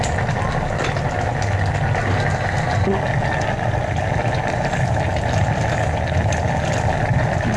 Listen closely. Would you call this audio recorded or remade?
recorded